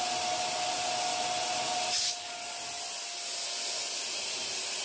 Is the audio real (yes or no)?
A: yes